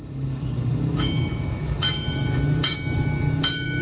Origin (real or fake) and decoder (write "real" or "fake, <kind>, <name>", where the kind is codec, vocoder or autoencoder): fake, autoencoder, DAC-VAE